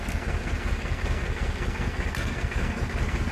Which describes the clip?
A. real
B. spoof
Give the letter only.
B